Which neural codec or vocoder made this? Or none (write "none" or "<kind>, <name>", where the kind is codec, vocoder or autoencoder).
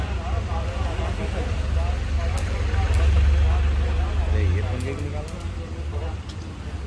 none